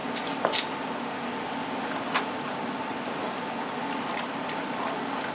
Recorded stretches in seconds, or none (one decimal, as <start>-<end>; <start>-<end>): 0.0-5.3

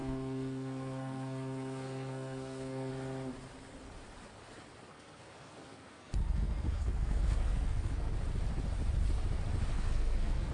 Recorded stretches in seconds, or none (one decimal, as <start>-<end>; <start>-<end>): 2.9-4.9; 8.1-9.7

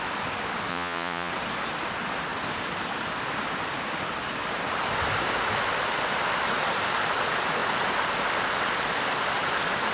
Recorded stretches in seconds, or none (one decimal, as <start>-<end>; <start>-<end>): 0.0-0.7; 1.3-9.9

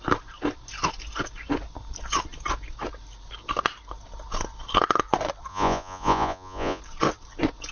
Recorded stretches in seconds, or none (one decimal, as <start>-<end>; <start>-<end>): 0.0-5.5; 6.8-7.7

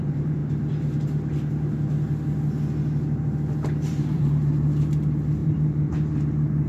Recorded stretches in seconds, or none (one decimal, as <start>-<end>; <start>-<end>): 0.4-3.8

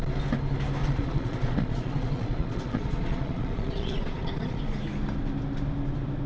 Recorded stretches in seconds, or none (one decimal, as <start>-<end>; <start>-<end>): 0.0-0.8; 4.6-6.3

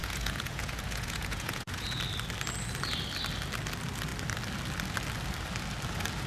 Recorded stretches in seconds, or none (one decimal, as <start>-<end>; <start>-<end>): 2.0-6.3

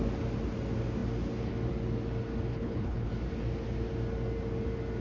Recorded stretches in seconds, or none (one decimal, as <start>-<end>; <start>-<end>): 0.0-2.5; 3.1-5.0